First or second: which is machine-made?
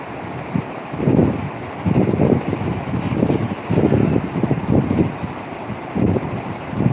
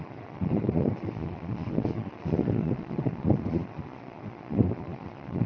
second